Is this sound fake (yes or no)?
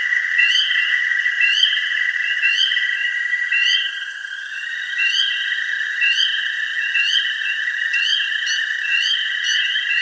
yes